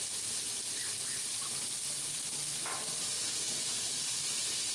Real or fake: fake